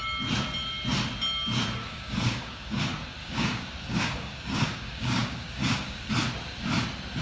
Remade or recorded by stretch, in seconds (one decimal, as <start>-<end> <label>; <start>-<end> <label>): 0.0-1.8 recorded; 1.8-2.8 remade; 2.8-3.2 recorded; 3.2-6.1 remade; 6.1-7.2 recorded